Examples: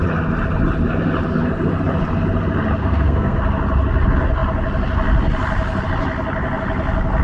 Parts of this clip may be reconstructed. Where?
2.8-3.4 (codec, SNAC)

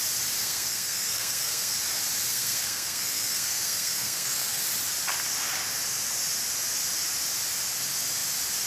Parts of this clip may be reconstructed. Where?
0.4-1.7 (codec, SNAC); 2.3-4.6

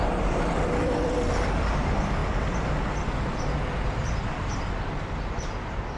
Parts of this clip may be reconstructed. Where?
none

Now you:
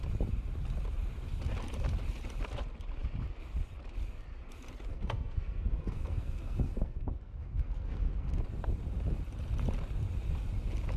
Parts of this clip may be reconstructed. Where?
4.9-8.3 (codec, SNAC)

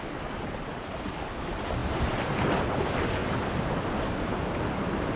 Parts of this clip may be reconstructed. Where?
none

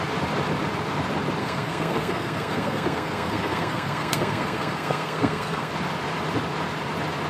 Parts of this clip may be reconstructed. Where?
1.4-5.7 (codec, SNAC)

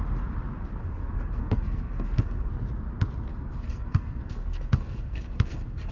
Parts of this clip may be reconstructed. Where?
0.8-2.5 (codec, SNAC); 3.3-5.9

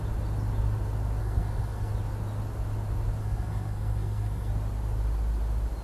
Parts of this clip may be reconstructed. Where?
1.2-1.9 (codec, SNAC); 3.2-4.5